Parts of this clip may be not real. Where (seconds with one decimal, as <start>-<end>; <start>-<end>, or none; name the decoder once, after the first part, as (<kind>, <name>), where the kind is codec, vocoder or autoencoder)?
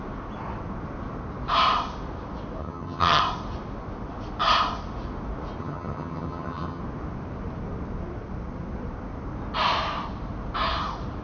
2.6-3.2 (vocoder, HiFi-GAN); 5.6-6.8